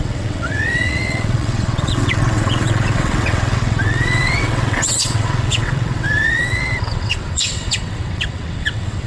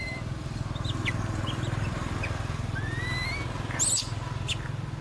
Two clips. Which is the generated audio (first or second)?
first